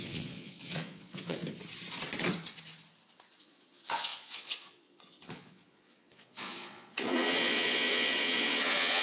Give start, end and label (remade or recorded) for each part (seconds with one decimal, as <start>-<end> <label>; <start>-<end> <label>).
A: 0.0-1.4 remade; 1.4-3.4 recorded; 3.4-9.0 remade